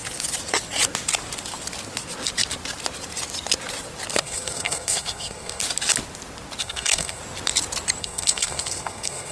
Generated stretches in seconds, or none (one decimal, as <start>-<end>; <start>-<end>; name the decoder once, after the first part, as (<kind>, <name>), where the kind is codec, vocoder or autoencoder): 4.2-5.6 (codec, SNAC); 6.6-7.2; 8.0-9.3